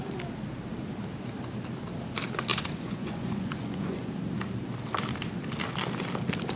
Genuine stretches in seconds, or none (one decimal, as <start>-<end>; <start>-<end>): 0.0-2.5; 4.1-6.6